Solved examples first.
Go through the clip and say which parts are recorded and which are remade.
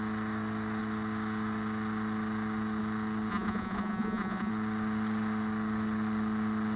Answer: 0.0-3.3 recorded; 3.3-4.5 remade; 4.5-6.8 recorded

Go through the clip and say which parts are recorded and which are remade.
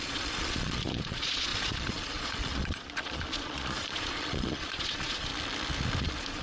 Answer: 0.0-5.3 remade; 5.3-6.0 recorded; 6.0-6.4 remade